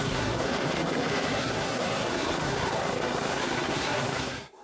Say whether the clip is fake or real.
fake